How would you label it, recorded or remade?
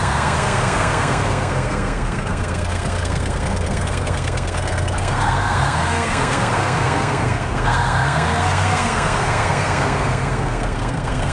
remade